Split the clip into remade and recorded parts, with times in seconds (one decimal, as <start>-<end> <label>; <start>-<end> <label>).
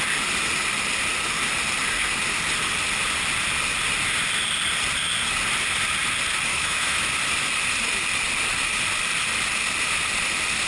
0.0-6.5 recorded; 6.5-7.1 remade; 7.1-10.7 recorded